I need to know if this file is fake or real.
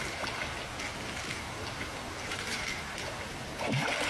real